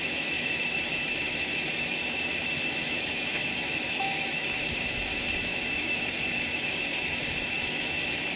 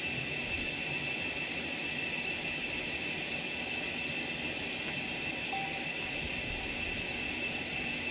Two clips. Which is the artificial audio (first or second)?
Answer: first